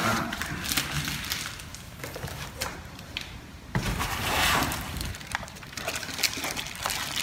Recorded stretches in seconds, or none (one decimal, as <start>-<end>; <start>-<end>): 0.5-1.7; 6.0-7.2